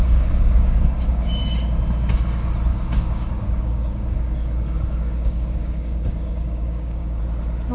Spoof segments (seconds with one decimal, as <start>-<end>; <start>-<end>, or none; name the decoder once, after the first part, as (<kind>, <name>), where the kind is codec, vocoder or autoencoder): 0.0-1.3 (codec, DAC); 2.7-7.2